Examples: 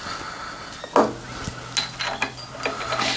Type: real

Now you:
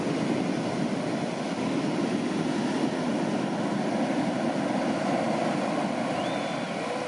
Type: real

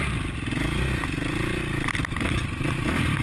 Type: fake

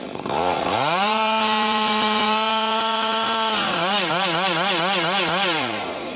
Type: fake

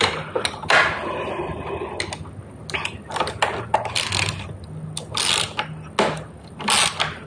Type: real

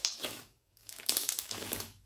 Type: fake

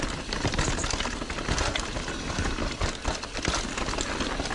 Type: real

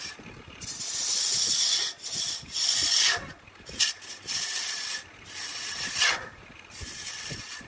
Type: real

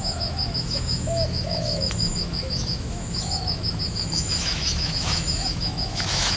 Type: fake